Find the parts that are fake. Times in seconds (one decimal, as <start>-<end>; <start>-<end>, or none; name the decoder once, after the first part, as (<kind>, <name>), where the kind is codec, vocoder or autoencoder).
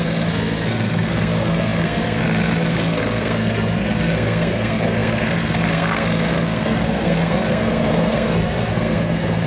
0.0-9.5 (codec, SNAC)